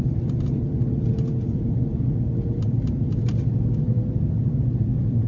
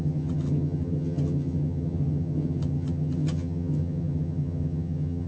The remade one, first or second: second